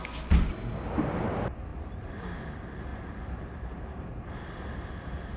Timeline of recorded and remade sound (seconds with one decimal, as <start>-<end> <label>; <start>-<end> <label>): 0.0-1.7 recorded; 1.7-2.4 remade; 2.4-2.9 recorded; 2.9-4.3 remade; 4.3-5.4 recorded